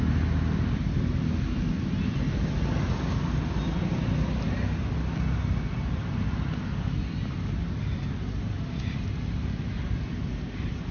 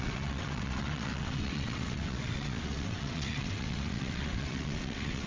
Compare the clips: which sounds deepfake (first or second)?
second